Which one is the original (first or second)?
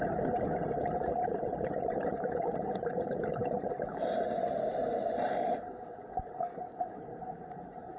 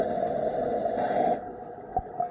second